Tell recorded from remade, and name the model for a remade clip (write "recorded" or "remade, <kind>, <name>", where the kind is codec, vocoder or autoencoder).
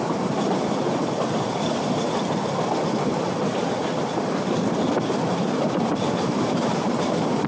remade, vocoder, BigVGAN v2